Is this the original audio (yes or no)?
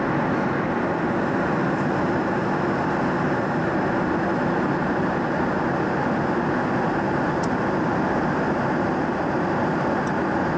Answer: yes